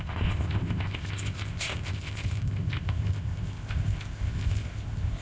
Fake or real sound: fake